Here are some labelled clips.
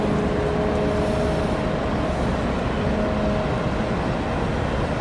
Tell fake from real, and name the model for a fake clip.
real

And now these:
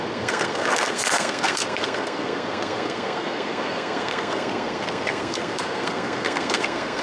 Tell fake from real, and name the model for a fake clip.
fake, codec, SNAC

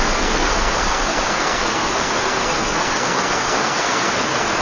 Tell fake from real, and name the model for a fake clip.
fake, codec, SNAC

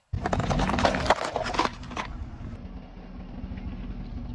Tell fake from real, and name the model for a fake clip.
real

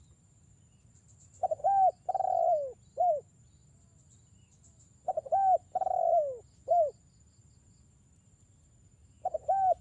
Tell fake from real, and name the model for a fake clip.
real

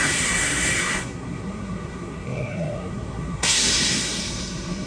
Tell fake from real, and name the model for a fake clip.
fake, codec, SNAC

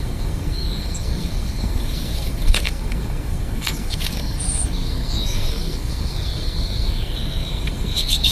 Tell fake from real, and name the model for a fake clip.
fake, codec, SNAC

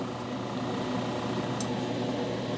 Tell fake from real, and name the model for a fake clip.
real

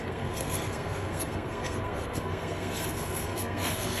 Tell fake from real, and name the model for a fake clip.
fake, codec, SNAC